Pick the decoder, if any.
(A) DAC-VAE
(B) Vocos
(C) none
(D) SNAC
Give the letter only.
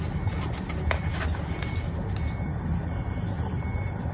C